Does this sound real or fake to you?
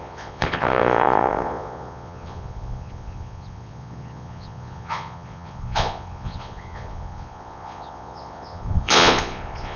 fake